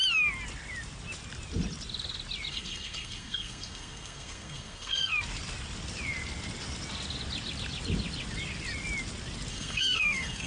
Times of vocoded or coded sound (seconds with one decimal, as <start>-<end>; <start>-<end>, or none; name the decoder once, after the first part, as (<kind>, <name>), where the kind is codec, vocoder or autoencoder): 2.5-5.1 (codec, SNAC); 9.5-10.5